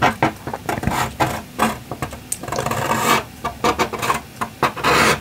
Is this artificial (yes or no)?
no